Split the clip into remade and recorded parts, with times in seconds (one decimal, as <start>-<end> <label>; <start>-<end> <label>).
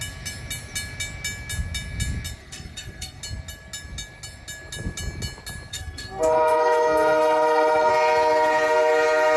0.0-2.4 recorded; 2.4-3.2 remade; 3.2-5.7 recorded; 5.7-7.9 remade; 7.9-9.4 recorded